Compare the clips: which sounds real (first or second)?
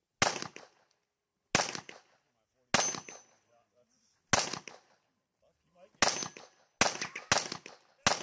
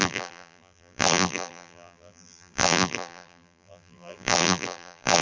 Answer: first